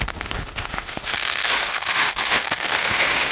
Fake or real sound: fake